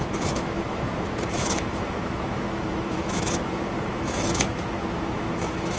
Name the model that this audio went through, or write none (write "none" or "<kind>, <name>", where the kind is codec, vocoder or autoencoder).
autoencoder, DAC-VAE